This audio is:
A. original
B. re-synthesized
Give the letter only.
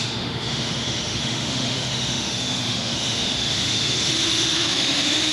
B